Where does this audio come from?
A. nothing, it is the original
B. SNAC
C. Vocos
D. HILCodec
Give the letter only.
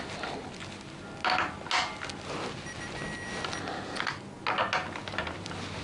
A